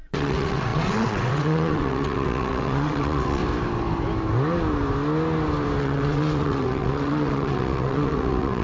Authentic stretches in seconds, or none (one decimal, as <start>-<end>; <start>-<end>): 3.4-5.8